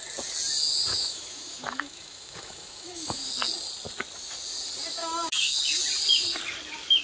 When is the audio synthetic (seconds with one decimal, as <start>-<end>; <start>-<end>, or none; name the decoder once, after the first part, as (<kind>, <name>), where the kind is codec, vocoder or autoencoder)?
0.9-3.3 (autoencoder, DAC-VAE); 5.0-5.6